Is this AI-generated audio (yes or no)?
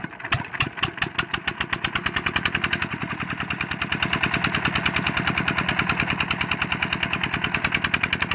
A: no